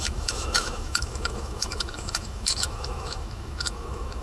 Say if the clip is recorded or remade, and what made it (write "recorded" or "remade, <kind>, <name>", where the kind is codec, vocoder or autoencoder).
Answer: remade, autoencoder, DAC-VAE